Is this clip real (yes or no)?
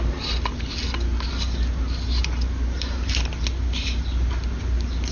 yes